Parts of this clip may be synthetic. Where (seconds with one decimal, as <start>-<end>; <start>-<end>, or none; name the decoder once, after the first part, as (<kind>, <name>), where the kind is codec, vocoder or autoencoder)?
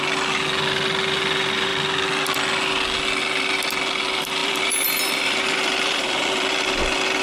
4.4-6.8 (vocoder, BigVGAN v2)